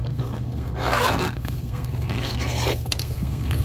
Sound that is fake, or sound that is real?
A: fake